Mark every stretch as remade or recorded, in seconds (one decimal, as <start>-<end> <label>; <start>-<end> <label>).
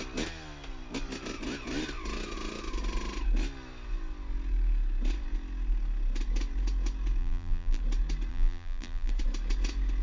0.0-7.2 recorded; 7.2-7.8 remade; 7.8-8.3 recorded; 8.3-9.1 remade; 9.1-10.0 recorded